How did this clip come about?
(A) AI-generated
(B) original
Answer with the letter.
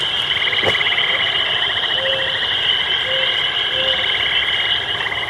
B